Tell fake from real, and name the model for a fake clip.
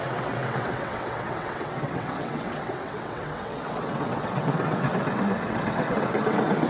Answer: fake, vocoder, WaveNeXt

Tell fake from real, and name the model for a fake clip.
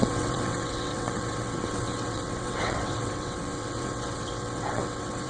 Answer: fake, vocoder, WaveNeXt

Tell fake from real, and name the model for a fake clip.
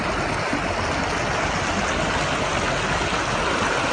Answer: real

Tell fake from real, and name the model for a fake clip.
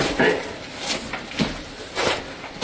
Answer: real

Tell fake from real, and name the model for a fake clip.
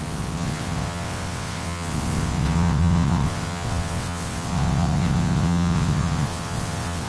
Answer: fake, vocoder, WaveNeXt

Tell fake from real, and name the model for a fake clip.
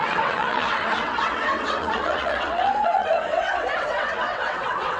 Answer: fake, vocoder, WaveNeXt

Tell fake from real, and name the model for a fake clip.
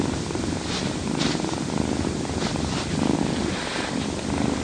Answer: real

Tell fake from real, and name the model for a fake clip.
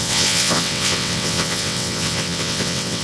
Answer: fake, vocoder, WaveNeXt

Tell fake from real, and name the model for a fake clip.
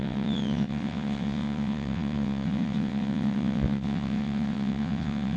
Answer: fake, vocoder, WaveNeXt